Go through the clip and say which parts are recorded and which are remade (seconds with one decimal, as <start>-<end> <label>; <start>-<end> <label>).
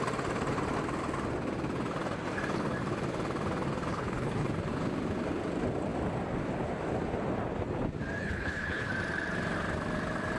0.0-3.9 recorded; 3.9-4.5 remade; 4.5-8.2 recorded; 8.2-8.9 remade; 8.9-10.4 recorded